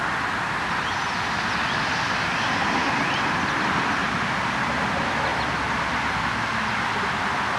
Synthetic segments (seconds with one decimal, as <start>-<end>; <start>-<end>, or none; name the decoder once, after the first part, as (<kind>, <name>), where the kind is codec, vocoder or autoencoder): none